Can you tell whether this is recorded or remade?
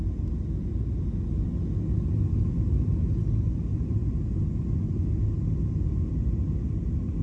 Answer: recorded